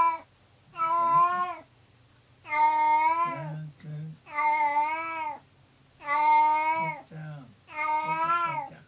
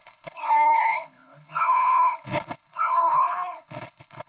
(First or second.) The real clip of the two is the first